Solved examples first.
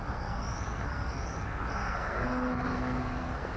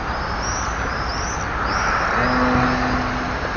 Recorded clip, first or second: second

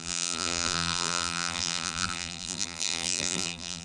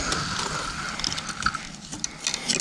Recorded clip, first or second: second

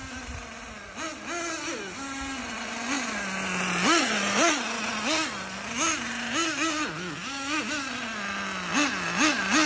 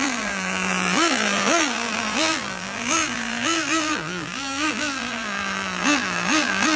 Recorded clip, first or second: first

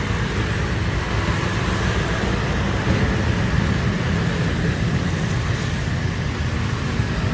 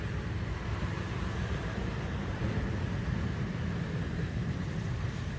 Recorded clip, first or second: first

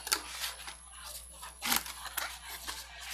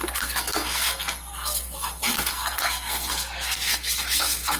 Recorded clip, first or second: first